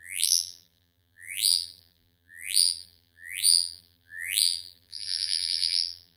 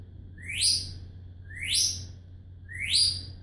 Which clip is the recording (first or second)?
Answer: second